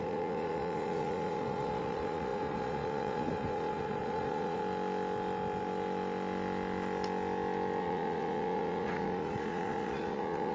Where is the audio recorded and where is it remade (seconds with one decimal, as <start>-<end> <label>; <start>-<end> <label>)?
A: 0.0-4.6 remade; 4.6-7.8 recorded; 7.8-10.5 remade